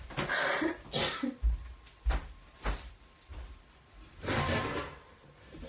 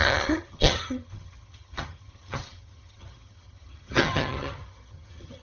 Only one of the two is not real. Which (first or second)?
second